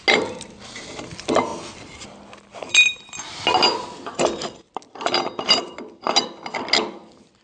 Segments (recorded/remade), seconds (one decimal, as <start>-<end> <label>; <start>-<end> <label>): 0.0-7.4 recorded